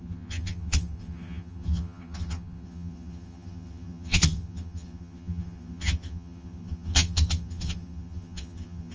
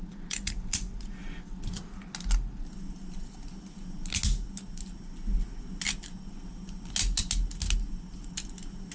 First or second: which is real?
second